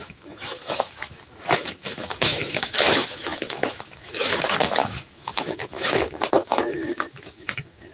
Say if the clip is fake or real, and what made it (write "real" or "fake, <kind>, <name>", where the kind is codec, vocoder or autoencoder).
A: fake, autoencoder, DAC-VAE